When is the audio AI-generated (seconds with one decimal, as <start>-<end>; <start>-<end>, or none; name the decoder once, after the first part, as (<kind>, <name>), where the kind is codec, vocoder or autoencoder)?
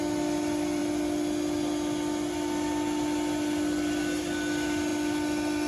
none